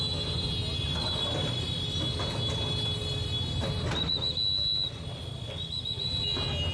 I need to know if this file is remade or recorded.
recorded